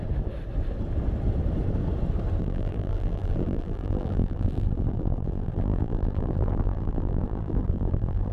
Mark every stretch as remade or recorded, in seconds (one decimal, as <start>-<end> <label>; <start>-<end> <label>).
0.0-2.4 recorded; 2.4-8.3 remade